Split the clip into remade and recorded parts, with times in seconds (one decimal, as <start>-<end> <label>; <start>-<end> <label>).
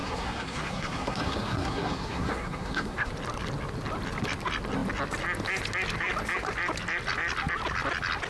0.0-3.1 remade; 3.1-8.3 recorded